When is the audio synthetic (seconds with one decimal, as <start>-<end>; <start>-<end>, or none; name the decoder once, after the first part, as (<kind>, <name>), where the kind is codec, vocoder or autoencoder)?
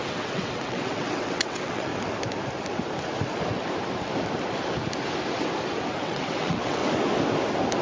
0.0-1.9 (vocoder, WaveNeXt); 6.0-6.8